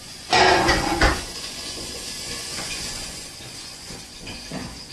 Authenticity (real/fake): fake